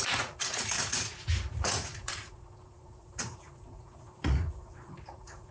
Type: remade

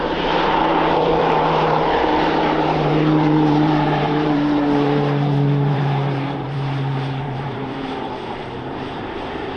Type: remade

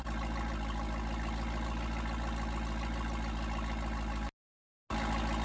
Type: recorded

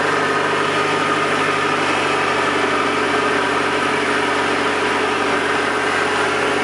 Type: recorded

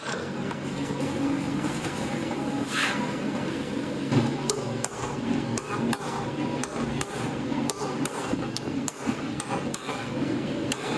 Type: remade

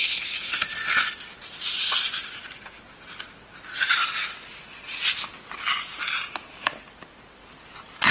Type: recorded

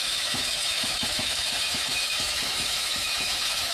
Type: remade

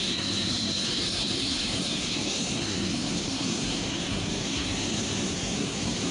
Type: remade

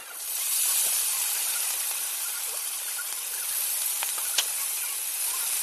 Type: remade